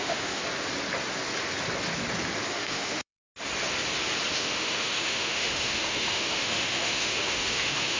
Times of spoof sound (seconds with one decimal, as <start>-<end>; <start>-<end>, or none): 0.0-0.4; 2.5-3.2; 4.3-8.0